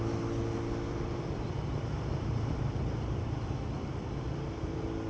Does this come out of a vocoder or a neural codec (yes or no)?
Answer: no